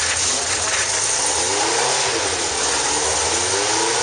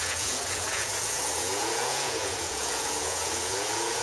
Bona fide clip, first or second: first